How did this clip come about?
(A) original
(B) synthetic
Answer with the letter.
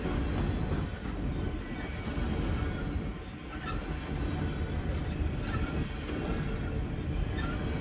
A